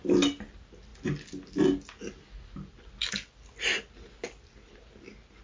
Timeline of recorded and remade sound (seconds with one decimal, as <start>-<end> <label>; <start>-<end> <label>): 0.0-5.4 recorded